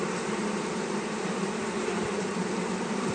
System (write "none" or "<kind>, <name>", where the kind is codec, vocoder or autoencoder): vocoder, BigVGAN v2